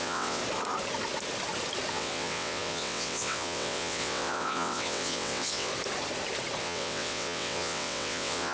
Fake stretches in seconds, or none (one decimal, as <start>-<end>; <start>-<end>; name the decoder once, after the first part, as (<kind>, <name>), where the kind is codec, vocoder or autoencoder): 0.0-0.4 (vocoder, WaveNeXt); 1.9-5.7; 6.6-8.5